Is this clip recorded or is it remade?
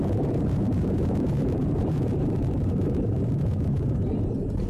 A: remade